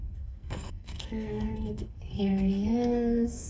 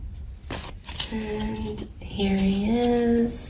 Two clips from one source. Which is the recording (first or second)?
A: second